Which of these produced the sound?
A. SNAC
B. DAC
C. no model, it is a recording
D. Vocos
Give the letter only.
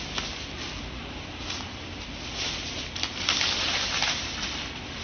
C